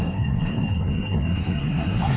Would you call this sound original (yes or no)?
no